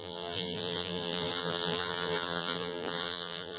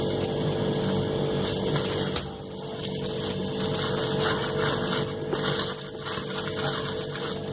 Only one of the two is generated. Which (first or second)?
first